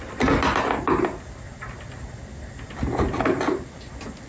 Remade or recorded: recorded